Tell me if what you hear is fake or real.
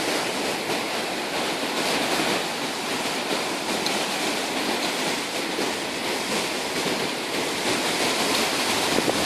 real